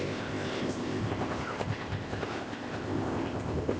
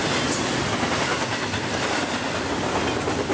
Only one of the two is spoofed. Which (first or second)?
first